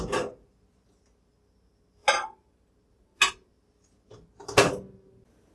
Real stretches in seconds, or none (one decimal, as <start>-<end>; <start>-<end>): 0.0-5.5